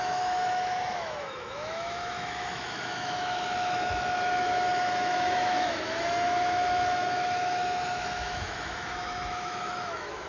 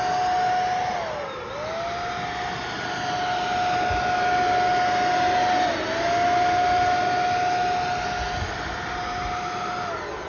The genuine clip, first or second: second